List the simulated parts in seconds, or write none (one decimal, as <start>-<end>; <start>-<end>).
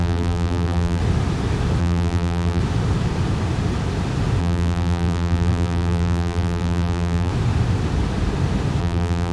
0.0-1.0; 1.8-2.6; 4.4-7.3; 8.8-9.3